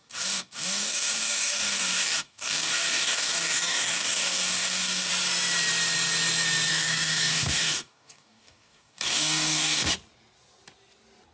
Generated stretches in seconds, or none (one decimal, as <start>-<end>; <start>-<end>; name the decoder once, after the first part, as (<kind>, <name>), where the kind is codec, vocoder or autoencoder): 0.0-5.1 (codec, DAC); 6.7-9.9